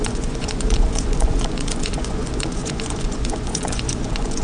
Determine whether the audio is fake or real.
fake